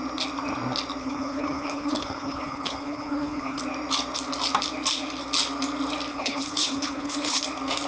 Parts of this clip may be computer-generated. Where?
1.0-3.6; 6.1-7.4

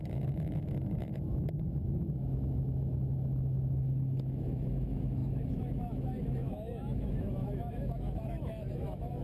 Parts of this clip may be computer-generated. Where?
0.0-9.2

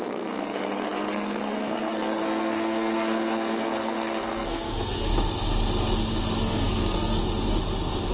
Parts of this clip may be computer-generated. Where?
0.0-5.1; 6.4-7.2

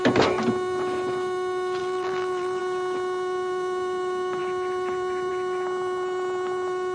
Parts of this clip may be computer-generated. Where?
1.8-2.6